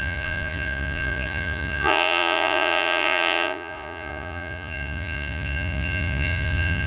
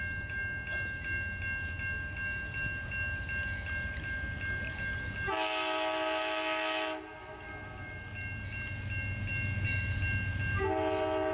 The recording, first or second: second